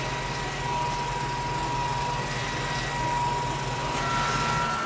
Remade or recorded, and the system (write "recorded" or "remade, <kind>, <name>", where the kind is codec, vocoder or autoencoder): recorded